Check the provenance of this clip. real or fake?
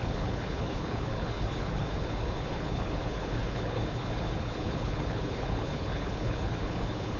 fake